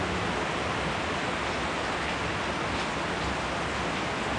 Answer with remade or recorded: recorded